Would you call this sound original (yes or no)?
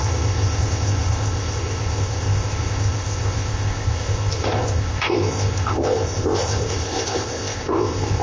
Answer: no